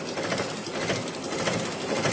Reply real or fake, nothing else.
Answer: real